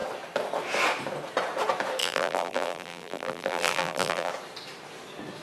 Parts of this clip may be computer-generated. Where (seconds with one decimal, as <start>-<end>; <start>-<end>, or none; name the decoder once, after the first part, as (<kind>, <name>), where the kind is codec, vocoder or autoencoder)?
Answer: 2.0-4.3 (vocoder, BigVGAN v2)